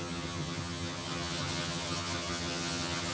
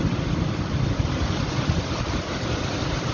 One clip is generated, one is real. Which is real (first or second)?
second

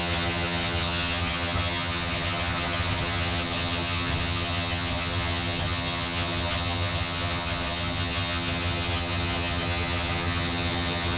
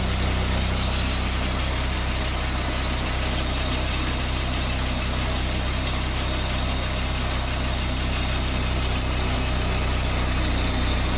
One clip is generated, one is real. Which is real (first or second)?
second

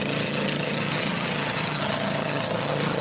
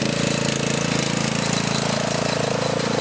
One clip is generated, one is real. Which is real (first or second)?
second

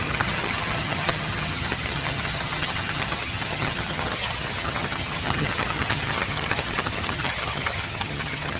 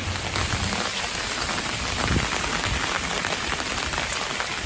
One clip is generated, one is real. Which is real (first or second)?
second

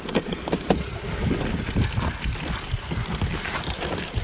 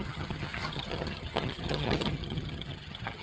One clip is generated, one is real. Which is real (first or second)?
first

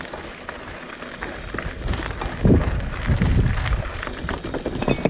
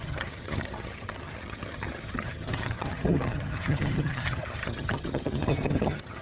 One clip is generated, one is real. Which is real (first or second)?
first